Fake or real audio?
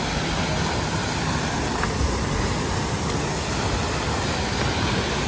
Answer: real